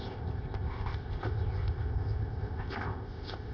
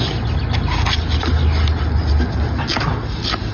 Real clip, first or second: second